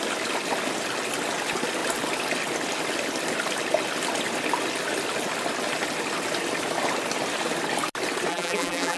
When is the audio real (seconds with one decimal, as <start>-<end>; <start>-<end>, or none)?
0.0-8.3

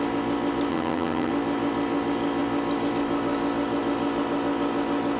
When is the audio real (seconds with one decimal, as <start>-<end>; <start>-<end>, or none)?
0.0-0.7; 1.3-5.2

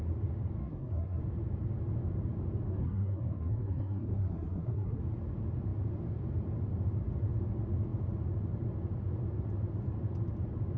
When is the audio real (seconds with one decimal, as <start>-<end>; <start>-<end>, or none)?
0.0-0.6; 1.2-2.7; 5.0-10.8

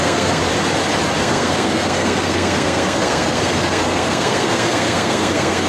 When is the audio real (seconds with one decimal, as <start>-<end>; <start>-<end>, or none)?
0.4-1.2